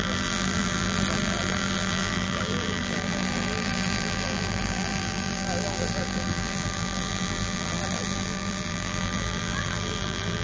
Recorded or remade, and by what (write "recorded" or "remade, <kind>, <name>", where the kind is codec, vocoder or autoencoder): remade, vocoder, BigVGAN v2